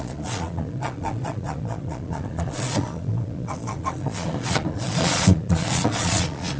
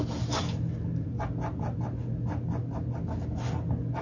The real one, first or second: second